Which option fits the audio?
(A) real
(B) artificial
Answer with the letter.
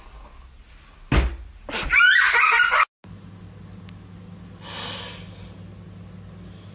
A